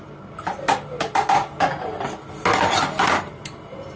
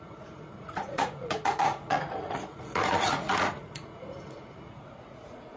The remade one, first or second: second